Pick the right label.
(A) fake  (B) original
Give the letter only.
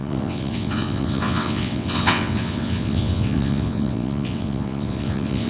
A